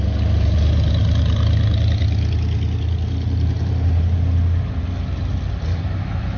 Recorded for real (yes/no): yes